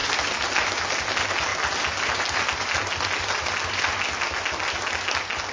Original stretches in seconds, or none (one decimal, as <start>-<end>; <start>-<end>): 0.0-5.5